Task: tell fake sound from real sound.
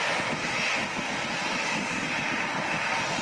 real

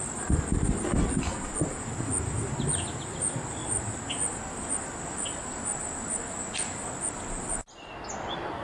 real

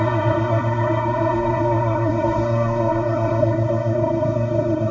fake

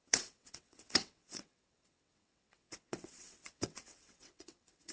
fake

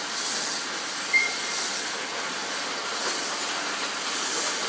real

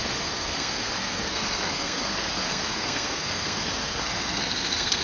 fake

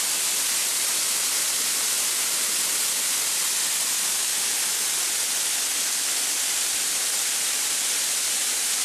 real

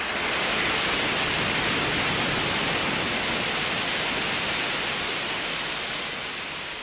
real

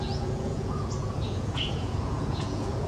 fake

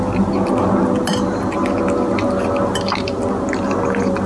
real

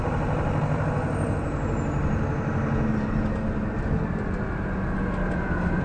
real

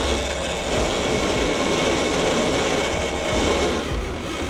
real